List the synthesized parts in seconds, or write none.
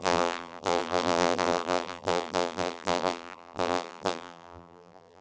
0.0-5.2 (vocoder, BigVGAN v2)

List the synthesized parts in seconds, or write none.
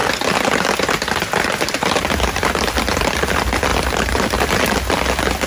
3.7-4.4 (vocoder, BigVGAN v2)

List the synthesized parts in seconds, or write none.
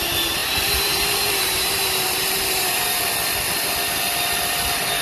0.4-3.0 (vocoder, BigVGAN v2)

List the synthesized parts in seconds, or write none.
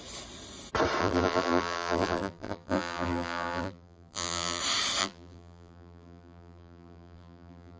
1.0-4.6 (vocoder, BigVGAN v2); 5.0-7.8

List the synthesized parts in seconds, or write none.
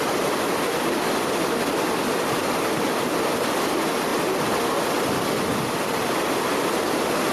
none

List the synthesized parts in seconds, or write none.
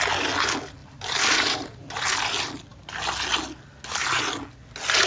0.8-1.9 (vocoder, BigVGAN v2)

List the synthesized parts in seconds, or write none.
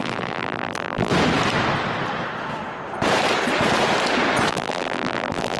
0.0-1.1 (vocoder, BigVGAN v2); 4.5-5.6